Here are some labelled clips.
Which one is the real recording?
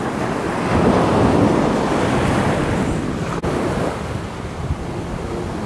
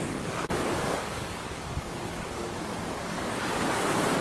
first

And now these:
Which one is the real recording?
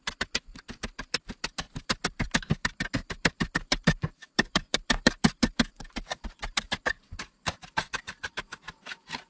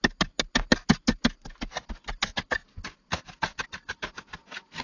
second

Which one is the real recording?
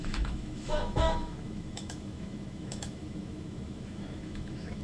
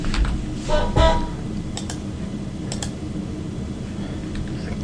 second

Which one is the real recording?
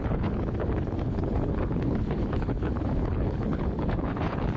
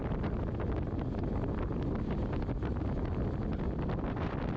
second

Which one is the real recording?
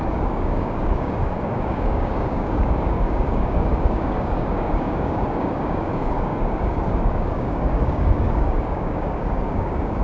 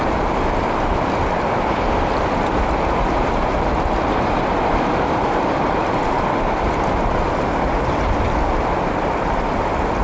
second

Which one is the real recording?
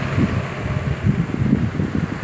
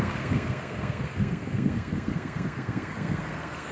first